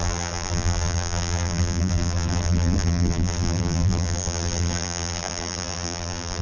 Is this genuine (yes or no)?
no